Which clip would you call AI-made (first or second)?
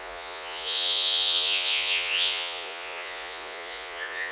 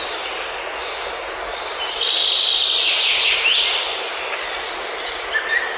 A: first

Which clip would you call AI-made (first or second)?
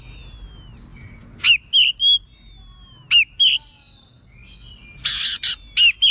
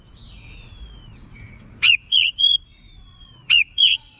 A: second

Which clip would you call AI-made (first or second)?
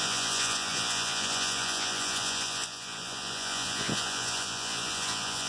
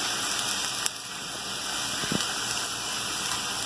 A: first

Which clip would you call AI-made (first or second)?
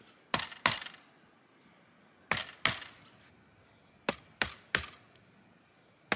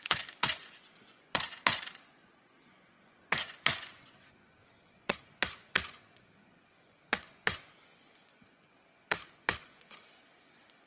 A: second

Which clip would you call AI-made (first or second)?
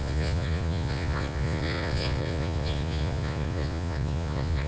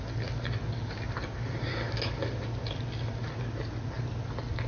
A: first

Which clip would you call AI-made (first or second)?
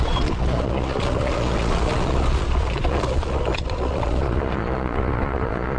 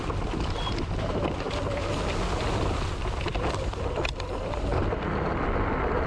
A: first